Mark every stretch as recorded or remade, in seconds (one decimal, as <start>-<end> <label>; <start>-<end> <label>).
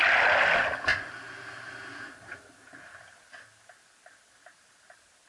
0.0-5.3 recorded